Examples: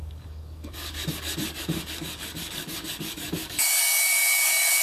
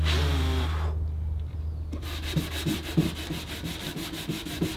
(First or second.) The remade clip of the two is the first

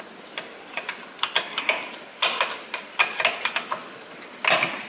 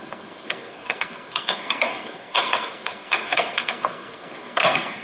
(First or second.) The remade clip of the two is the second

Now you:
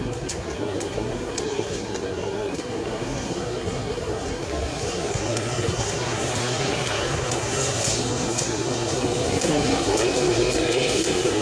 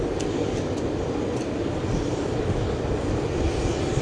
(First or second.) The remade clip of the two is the first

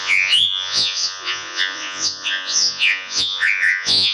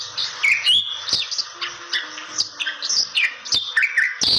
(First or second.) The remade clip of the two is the first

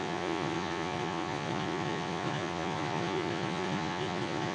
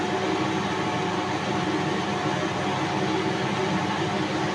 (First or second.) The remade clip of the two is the first